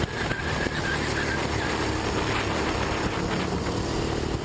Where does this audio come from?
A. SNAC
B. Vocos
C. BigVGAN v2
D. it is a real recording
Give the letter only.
D